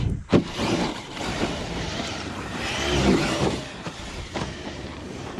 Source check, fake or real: fake